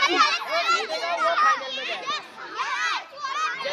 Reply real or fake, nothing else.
real